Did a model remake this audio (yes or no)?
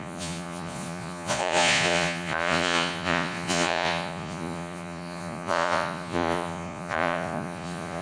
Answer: yes